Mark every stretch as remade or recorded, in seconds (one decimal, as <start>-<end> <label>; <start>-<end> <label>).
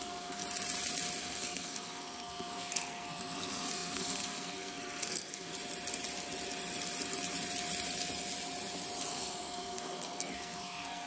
0.0-0.4 remade; 0.4-1.2 recorded; 1.2-5.5 remade; 5.5-9.1 recorded; 9.1-11.1 remade